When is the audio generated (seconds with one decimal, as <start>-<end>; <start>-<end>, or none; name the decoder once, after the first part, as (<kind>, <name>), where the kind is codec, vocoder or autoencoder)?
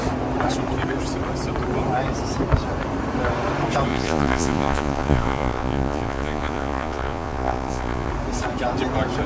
3.9-8.1 (vocoder, Vocos)